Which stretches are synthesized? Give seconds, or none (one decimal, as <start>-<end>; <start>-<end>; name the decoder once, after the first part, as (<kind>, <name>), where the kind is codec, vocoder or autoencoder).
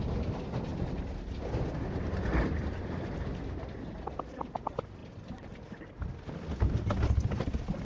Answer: none